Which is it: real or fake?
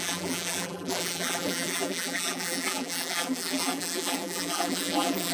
fake